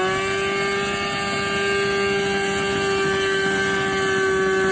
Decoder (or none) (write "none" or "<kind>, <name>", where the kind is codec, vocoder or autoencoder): none